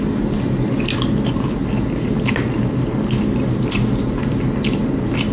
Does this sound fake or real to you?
real